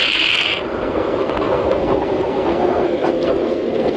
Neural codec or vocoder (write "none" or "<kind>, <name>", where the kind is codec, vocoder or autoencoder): codec, SNAC